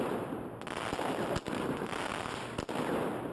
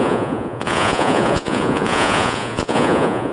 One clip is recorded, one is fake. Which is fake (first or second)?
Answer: second